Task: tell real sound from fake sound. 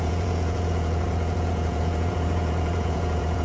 fake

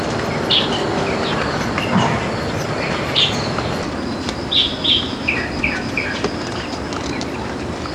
real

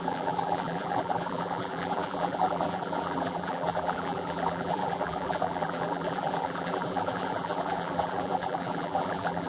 fake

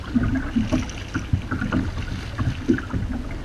real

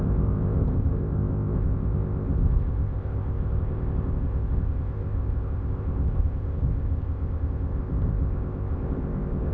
fake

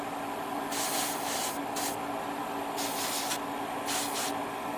real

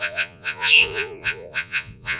fake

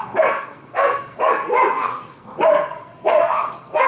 fake